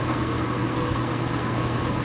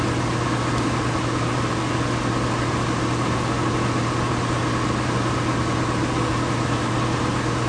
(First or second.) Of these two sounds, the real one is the second